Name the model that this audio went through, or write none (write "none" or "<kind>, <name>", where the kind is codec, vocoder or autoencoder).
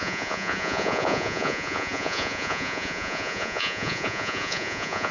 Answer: vocoder, Vocos